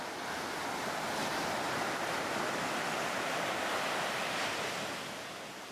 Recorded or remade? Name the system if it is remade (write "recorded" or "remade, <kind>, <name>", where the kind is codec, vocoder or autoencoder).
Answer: recorded